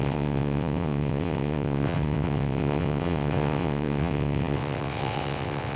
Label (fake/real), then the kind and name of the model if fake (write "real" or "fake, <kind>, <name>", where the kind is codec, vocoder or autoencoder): fake, vocoder, WaveNeXt